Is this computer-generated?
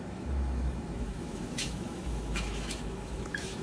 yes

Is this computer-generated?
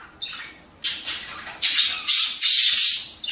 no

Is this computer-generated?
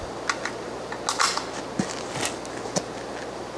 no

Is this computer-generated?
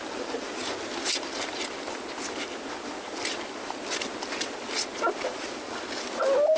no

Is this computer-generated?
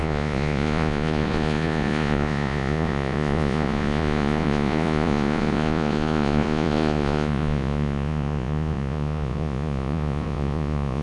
yes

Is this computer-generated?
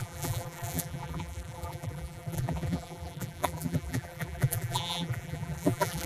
yes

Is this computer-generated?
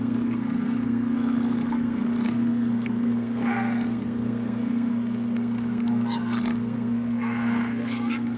yes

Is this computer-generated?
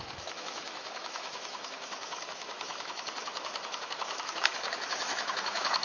yes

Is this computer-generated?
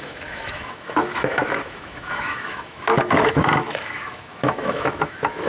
yes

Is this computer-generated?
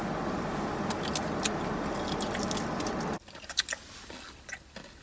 no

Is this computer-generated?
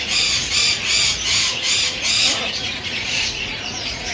yes